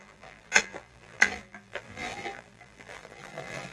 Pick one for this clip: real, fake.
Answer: fake